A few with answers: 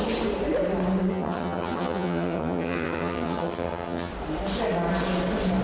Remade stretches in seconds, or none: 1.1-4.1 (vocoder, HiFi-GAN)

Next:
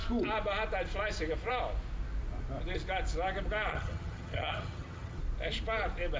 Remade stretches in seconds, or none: 3.7-5.2 (vocoder, HiFi-GAN)

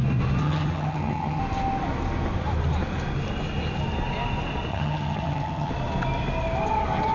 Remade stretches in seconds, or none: 0.4-1.4 (vocoder, HiFi-GAN); 4.7-5.7

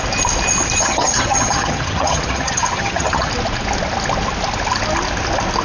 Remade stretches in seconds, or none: 0.8-3.3 (vocoder, HiFi-GAN)

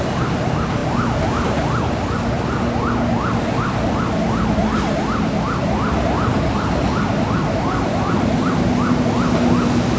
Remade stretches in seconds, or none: none

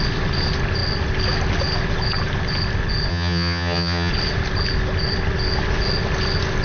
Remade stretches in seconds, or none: 3.1-4.1 (vocoder, HiFi-GAN)

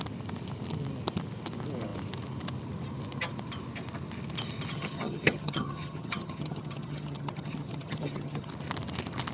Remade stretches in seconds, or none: 4.7-8.5 (vocoder, HiFi-GAN)

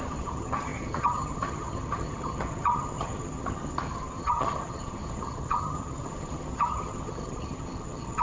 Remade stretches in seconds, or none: 0.0-8.2 (vocoder, HiFi-GAN)